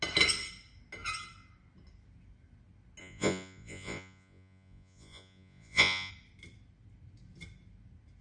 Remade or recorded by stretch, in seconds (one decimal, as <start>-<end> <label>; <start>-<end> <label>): 0.0-3.0 recorded; 3.0-6.1 remade; 6.1-8.2 recorded